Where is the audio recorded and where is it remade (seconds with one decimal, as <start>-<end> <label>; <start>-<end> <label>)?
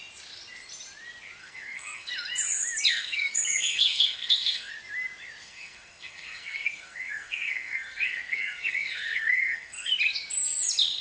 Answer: 0.0-1.4 recorded; 1.4-2.1 remade; 2.1-2.9 recorded; 2.9-4.7 remade; 4.7-5.4 recorded; 5.4-9.9 remade; 9.9-11.0 recorded